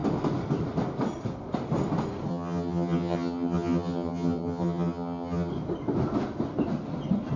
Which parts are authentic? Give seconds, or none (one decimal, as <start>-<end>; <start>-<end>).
0.0-2.3; 5.5-7.4